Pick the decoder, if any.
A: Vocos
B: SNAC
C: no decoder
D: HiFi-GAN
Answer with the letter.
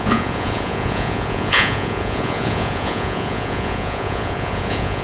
A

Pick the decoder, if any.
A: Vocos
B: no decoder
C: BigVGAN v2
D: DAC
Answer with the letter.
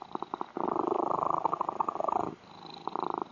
B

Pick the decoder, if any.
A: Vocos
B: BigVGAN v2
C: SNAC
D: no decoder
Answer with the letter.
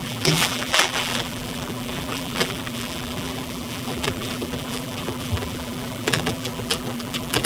B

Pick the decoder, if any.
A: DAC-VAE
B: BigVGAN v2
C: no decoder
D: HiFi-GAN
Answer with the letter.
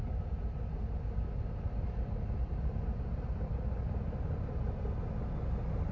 C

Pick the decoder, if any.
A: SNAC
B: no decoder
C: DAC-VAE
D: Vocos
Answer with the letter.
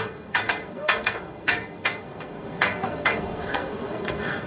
A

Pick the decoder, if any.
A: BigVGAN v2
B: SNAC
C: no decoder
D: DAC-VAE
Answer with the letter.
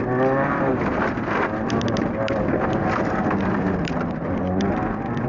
C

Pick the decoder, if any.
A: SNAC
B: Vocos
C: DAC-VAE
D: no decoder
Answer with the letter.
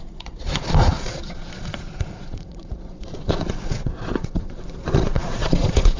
B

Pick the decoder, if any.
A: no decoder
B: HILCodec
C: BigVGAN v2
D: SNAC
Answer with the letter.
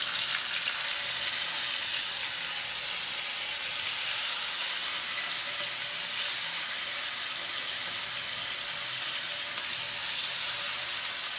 A